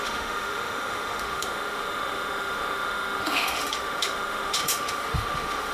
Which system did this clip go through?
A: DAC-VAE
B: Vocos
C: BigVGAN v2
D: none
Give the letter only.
A